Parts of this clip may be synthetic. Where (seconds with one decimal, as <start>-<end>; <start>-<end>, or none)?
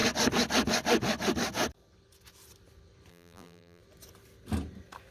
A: 3.1-3.8